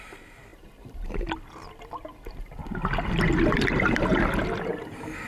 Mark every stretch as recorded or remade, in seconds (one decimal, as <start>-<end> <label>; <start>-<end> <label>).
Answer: 0.0-4.1 recorded; 4.1-5.3 remade